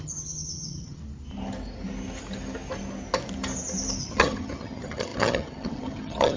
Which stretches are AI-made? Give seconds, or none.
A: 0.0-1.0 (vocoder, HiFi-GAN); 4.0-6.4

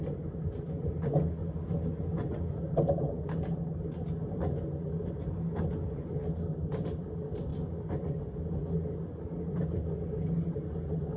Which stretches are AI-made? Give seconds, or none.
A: none

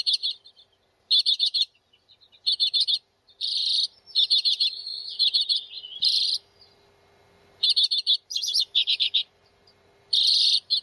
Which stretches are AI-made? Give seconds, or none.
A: none

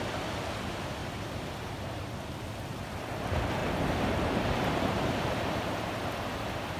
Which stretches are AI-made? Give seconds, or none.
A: 1.0-2.1 (vocoder, BigVGAN v2); 3.6-5.8

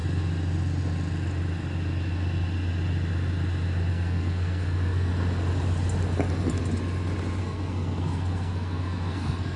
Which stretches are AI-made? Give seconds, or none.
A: 3.9-5.1 (codec, SNAC); 7.4-9.6